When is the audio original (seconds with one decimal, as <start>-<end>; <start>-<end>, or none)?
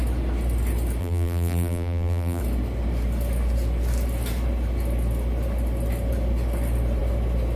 0.0-1.0; 2.4-7.6